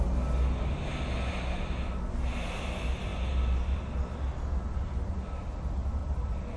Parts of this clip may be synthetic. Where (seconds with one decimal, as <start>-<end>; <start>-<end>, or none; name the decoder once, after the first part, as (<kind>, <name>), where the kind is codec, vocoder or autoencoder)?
none